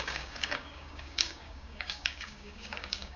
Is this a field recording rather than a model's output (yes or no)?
no